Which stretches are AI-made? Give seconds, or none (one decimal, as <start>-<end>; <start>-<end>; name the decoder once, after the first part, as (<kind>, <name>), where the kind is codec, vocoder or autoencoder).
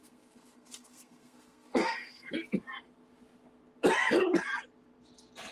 0.0-2.3 (codec, SNAC)